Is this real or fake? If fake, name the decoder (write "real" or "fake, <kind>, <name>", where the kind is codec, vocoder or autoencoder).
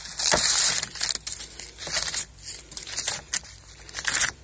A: real